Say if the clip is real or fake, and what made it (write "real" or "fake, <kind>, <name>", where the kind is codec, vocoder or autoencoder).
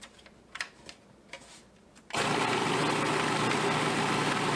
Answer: real